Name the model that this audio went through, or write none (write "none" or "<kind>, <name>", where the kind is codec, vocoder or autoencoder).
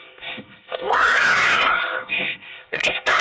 codec, SNAC